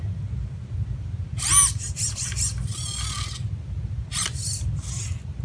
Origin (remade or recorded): recorded